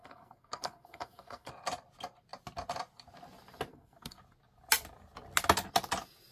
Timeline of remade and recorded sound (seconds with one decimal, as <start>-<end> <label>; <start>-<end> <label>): 0.0-1.5 remade; 1.5-3.7 recorded; 3.7-4.2 remade; 4.2-6.3 recorded